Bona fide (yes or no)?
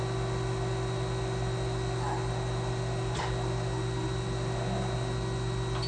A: yes